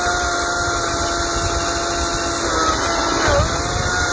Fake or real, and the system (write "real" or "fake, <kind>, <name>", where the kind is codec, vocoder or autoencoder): real